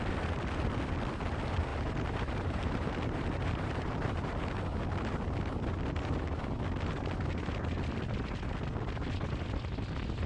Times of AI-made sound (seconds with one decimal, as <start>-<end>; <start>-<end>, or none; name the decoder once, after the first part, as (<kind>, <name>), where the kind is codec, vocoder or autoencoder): 1.7-4.3 (vocoder, BigVGAN v2)